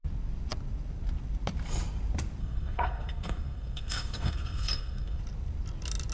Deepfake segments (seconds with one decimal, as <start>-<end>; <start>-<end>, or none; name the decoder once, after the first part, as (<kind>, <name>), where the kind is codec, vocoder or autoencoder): 2.4-5.2 (codec, SNAC)